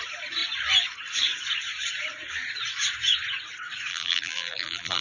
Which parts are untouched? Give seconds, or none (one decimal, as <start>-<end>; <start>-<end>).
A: 0.0-3.9

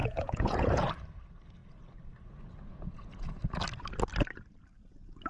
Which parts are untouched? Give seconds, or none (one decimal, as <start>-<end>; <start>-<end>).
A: 0.9-2.7; 3.4-5.3